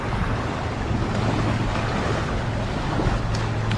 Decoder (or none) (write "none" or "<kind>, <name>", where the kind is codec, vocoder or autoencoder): none